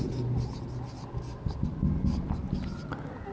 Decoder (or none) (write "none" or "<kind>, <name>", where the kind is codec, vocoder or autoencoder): none